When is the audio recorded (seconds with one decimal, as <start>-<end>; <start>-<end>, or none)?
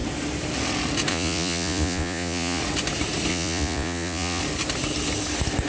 0.0-1.1; 2.6-3.3; 4.4-5.7